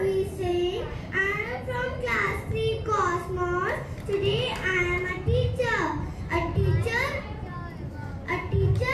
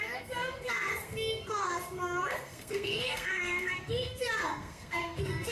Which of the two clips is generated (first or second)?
second